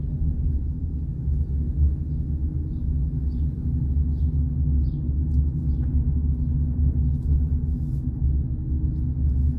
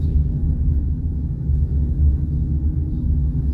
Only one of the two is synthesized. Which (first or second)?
second